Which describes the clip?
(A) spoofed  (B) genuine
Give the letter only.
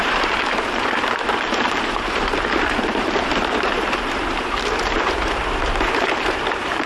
A